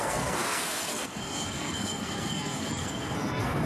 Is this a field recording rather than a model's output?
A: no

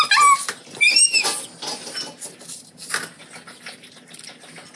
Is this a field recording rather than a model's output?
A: yes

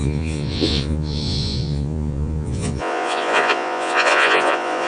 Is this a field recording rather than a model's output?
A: no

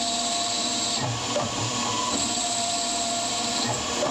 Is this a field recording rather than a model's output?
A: no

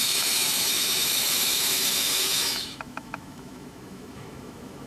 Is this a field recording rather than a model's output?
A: no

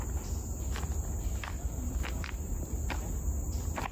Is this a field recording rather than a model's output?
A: yes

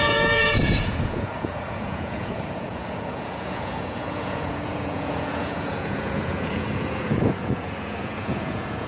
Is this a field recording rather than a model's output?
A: no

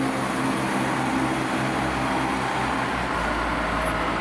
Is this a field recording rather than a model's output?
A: yes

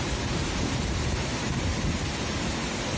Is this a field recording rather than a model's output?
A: yes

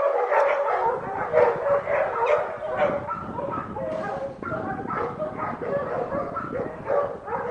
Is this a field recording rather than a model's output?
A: yes